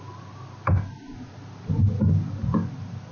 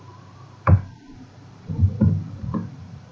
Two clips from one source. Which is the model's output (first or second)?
second